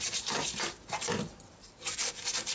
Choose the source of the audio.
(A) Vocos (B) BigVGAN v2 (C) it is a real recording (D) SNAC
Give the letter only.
C